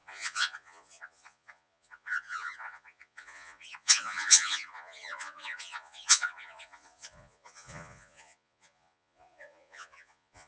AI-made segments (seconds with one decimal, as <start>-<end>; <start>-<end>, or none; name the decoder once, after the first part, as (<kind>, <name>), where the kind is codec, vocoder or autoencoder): 0.0-10.5 (vocoder, Vocos)